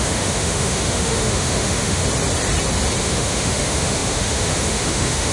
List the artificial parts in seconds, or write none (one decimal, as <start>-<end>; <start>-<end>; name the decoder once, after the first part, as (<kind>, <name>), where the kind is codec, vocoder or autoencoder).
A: 0.0-2.0 (autoencoder, DAC-VAE); 3.0-5.3